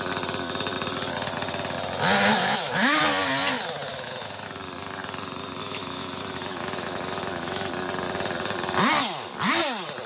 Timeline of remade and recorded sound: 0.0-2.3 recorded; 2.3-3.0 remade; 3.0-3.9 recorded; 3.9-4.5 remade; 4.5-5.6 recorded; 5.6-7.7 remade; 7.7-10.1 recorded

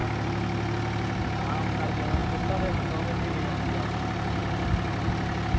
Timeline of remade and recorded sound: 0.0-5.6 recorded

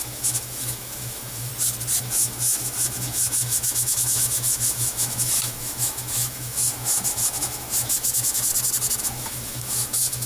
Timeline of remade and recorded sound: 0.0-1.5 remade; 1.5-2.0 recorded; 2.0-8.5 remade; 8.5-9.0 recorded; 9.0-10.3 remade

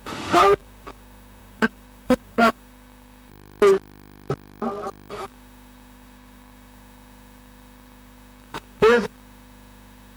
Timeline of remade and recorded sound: 0.0-3.3 remade; 3.3-5.1 recorded; 5.1-10.2 remade

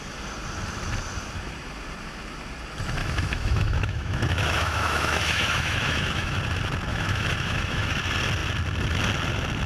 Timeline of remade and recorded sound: 0.0-3.0 recorded; 3.0-6.4 remade; 6.4-6.9 recorded; 6.9-8.0 remade; 8.0-9.7 recorded

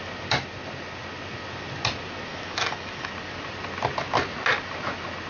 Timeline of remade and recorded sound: 0.0-2.3 recorded; 2.3-3.1 remade; 3.1-5.3 recorded